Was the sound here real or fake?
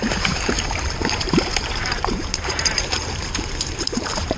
fake